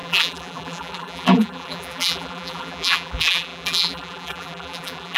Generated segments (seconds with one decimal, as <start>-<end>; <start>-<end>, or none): 0.0-5.2